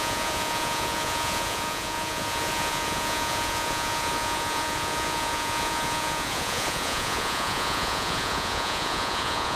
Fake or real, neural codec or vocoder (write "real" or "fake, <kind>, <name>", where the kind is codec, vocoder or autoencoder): fake, vocoder, Vocos